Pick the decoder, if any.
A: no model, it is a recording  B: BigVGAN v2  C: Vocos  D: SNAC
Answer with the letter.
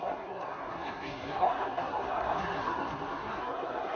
D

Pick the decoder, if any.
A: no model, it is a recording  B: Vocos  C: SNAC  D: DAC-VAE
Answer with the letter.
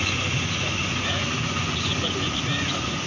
B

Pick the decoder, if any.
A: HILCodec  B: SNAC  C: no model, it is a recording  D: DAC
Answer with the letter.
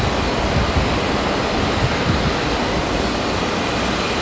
C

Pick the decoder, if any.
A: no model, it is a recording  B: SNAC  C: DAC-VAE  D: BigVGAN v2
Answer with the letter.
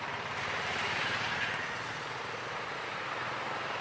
D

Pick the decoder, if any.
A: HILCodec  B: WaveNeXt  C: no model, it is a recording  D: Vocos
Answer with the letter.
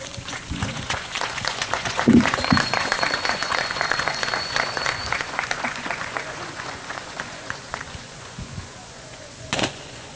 D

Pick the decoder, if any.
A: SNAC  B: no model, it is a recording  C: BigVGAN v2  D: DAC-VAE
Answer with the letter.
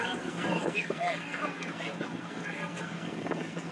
A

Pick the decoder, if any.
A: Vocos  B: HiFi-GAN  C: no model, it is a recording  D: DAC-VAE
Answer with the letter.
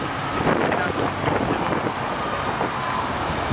C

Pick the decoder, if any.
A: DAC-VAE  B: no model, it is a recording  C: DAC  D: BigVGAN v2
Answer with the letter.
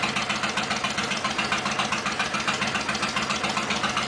B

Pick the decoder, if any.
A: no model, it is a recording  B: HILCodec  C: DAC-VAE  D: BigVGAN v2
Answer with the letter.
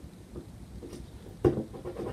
A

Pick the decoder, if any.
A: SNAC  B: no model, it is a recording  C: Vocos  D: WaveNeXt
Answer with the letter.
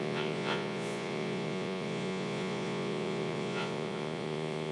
C